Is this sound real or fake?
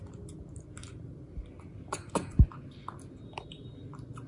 real